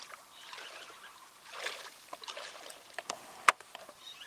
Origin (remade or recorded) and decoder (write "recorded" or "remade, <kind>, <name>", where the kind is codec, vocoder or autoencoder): recorded